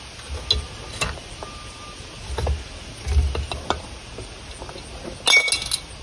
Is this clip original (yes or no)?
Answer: yes